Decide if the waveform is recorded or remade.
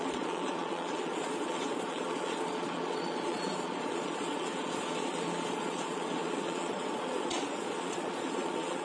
remade